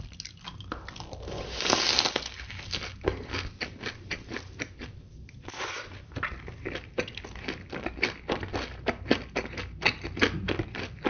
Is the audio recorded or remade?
recorded